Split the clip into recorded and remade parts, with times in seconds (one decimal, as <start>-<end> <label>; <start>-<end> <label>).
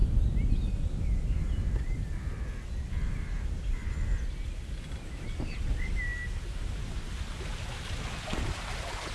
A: 0.0-9.1 recorded